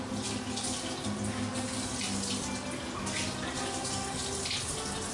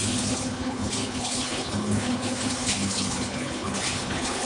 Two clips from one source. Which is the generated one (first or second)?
second